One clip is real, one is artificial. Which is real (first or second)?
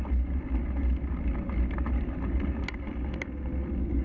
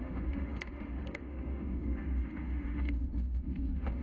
first